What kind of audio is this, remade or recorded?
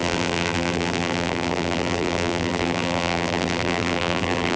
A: remade